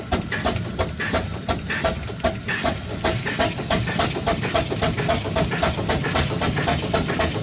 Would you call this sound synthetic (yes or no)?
no